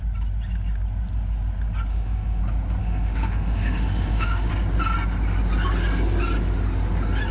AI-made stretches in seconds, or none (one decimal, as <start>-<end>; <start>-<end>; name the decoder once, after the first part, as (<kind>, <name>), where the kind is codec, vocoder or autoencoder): 1.9-2.4 (autoencoder, DAC-VAE); 2.8-4.5